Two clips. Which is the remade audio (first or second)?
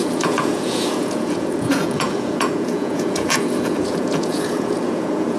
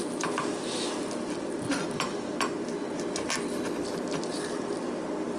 first